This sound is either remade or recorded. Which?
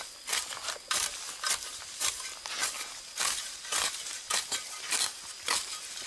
recorded